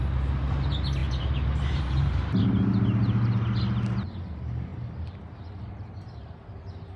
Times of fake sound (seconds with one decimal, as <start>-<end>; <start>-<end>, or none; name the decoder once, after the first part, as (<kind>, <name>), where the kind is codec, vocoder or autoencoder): 1.0-2.4 (vocoder, BigVGAN v2)